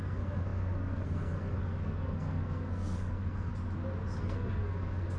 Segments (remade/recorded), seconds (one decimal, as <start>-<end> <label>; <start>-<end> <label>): 0.0-3.5 remade; 3.5-4.2 recorded; 4.2-5.2 remade